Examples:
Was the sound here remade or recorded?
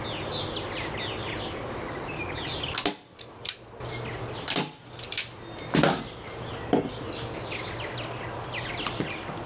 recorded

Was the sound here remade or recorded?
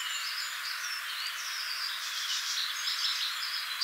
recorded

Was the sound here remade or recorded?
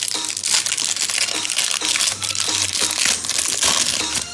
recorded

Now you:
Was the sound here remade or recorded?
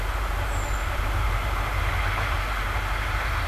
recorded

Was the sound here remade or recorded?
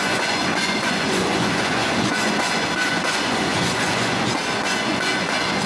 remade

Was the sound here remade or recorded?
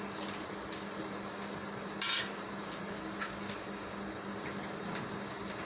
recorded